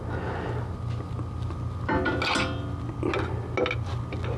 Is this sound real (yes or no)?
yes